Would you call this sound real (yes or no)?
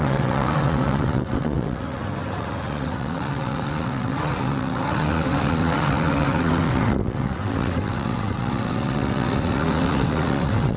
no